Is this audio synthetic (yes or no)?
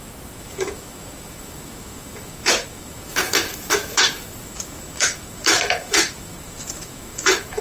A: yes